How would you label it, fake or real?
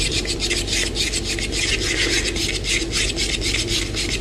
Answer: real